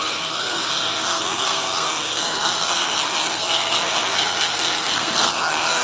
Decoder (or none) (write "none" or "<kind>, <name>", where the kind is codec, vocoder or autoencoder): codec, SNAC